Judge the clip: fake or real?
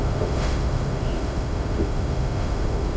fake